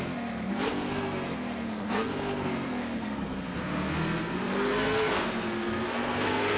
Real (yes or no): no